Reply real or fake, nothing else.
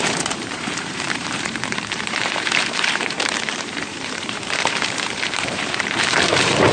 fake